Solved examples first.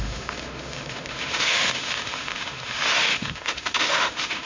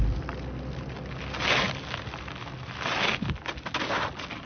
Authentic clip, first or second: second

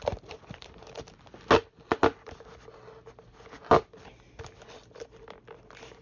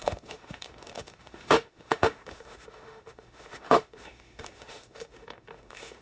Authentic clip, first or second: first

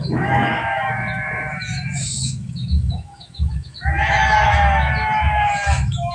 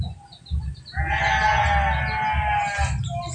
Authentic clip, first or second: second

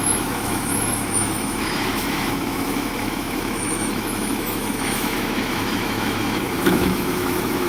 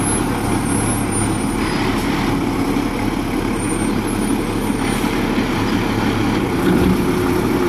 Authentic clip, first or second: second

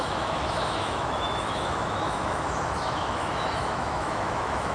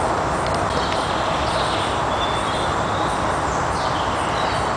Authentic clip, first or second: second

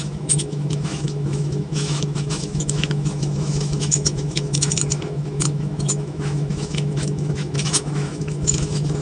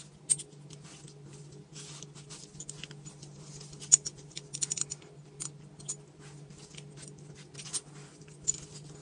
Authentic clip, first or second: second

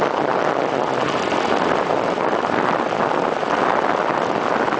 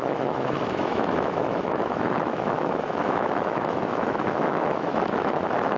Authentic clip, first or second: first